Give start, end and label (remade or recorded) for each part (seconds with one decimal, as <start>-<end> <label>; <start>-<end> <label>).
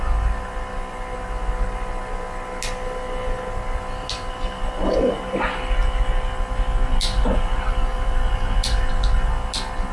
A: 0.0-7.9 recorded; 7.9-8.9 remade; 8.9-9.9 recorded